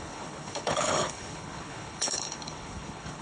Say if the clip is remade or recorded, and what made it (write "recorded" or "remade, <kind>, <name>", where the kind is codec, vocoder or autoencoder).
remade, codec, HILCodec